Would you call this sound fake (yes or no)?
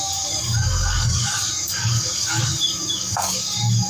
yes